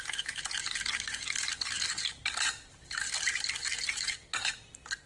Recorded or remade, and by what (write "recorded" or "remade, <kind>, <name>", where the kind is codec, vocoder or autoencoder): recorded